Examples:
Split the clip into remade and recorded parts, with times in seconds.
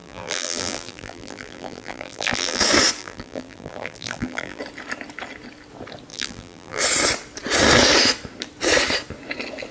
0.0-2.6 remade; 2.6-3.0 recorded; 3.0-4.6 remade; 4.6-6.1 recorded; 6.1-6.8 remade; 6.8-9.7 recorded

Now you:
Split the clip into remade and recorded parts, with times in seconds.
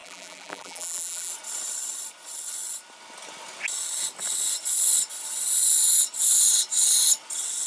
0.0-1.3 remade; 1.3-7.7 recorded